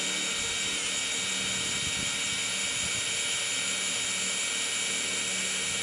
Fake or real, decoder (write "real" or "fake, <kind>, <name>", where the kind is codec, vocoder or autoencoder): real